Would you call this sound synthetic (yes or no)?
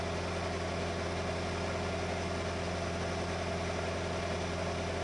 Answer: no